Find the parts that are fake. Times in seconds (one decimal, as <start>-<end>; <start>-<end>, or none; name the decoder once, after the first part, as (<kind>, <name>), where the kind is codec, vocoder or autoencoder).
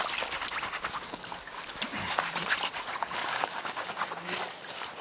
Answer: 3.2-3.9 (codec, DAC)